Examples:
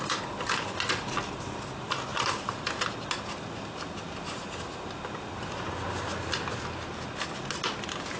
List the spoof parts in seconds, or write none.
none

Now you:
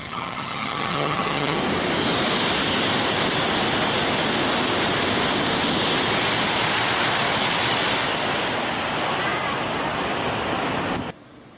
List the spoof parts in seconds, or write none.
0.0-1.6 (vocoder, HiFi-GAN)

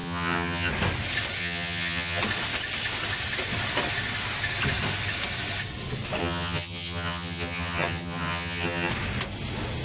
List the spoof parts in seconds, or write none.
0.0-0.7 (vocoder, HiFi-GAN); 1.4-2.2; 6.2-8.9